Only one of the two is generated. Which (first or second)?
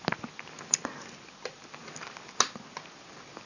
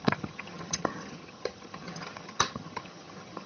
second